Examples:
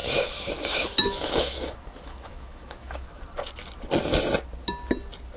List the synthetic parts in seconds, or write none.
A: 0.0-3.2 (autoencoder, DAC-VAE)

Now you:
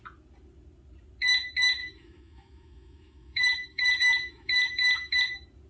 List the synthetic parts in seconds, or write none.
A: 1.8-5.2 (autoencoder, DAC-VAE)

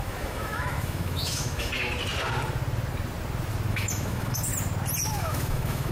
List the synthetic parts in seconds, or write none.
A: 0.0-1.7 (autoencoder, DAC-VAE); 3.7-4.5; 5.1-5.9